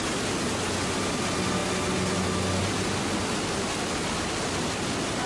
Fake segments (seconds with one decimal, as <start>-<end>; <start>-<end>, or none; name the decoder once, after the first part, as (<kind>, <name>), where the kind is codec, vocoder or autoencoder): none